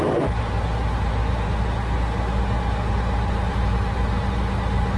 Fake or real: real